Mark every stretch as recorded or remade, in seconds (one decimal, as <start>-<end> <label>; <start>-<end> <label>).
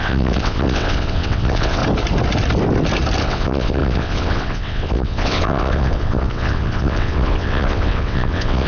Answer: 0.0-1.8 remade; 1.8-3.2 recorded; 3.2-8.7 remade